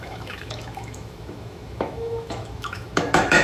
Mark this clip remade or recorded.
remade